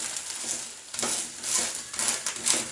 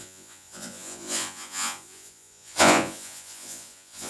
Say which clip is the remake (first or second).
second